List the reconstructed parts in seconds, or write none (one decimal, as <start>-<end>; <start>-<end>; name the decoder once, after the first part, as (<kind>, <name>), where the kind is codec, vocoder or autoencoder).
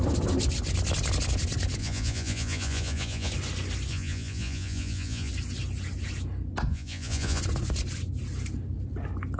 1.8-3.3 (vocoder, Vocos); 3.9-5.3; 6.7-7.4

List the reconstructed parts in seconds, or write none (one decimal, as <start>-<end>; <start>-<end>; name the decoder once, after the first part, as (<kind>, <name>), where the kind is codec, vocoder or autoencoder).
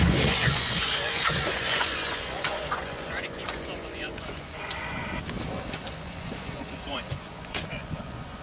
0.0-5.0 (vocoder, Vocos); 5.7-8.4